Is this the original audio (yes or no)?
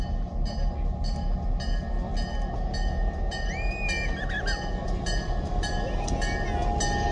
yes